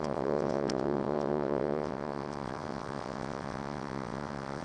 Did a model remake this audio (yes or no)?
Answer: yes